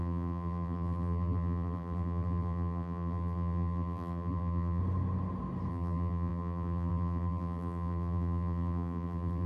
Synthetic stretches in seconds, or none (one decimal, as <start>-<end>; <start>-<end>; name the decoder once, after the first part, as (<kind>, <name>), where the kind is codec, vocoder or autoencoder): 0.0-4.8 (vocoder, BigVGAN v2); 5.7-9.5

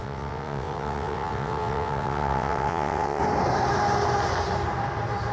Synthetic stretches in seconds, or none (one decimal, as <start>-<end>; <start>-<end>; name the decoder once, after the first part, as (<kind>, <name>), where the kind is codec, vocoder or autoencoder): 0.0-3.2 (vocoder, WaveNeXt)

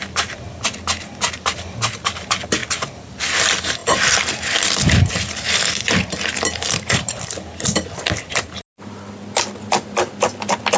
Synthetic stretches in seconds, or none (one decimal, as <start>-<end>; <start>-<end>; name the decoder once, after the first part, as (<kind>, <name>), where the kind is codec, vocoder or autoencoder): 3.8-8.0 (vocoder, BigVGAN v2)

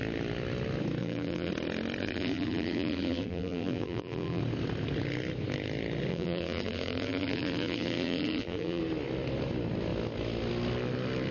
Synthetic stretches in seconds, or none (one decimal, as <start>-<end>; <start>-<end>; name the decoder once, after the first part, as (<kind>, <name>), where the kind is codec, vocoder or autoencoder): 1.0-1.5 (vocoder, BigVGAN v2); 2.0-4.4; 6.1-8.8

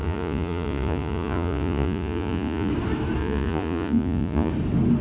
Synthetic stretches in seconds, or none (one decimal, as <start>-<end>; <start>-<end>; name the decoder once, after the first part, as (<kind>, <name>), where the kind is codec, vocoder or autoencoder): 0.0-2.7 (vocoder, Vocos); 3.2-4.5

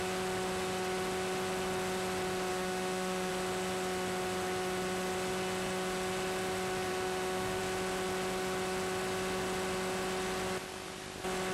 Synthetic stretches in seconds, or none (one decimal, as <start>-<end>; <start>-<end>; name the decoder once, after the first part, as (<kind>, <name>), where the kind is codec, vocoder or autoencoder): 2.5-3.3 (autoencoder, DAC-VAE); 6.9-7.6

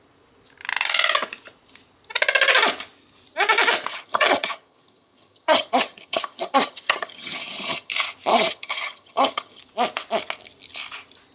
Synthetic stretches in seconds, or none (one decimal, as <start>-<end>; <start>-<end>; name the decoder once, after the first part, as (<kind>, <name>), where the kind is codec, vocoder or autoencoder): 3.9-7.9 (vocoder, HiFi-GAN); 8.3-9.6

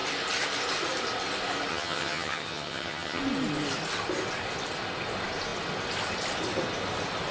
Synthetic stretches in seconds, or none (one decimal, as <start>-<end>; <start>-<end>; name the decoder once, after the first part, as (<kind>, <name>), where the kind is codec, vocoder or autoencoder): 1.7-3.2 (vocoder, HiFi-GAN)